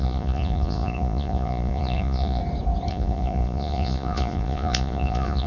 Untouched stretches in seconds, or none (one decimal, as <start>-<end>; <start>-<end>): 2.4-2.9